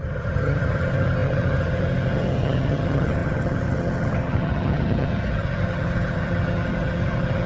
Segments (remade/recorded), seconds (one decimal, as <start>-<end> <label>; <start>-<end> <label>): 0.0-7.5 remade